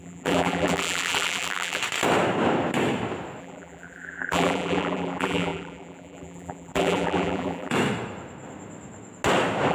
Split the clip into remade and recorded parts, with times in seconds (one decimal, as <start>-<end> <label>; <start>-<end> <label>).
0.0-1.8 remade; 1.8-3.4 recorded; 3.4-7.7 remade; 7.7-9.7 recorded